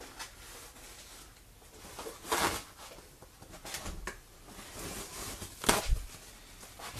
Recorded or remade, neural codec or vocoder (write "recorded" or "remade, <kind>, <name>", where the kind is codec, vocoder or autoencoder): recorded